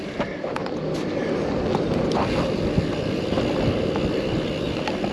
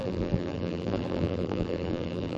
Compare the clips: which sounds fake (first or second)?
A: second